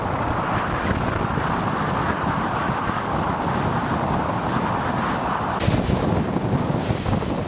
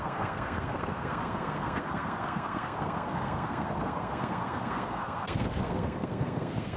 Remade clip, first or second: second